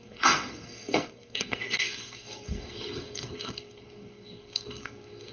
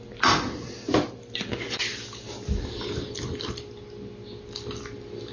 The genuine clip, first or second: second